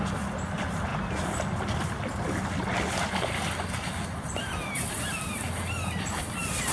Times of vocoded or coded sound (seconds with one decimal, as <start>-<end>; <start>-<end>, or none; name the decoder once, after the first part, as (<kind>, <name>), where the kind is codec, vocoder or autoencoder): none